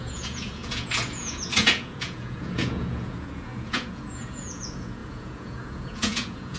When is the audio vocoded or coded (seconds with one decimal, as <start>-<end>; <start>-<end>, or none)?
0.0-6.6